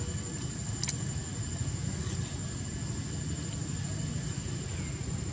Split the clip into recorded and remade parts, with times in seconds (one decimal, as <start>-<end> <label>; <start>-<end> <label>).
0.0-5.3 recorded